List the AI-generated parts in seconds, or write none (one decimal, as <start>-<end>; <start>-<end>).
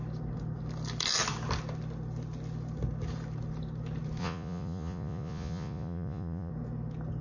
4.2-6.5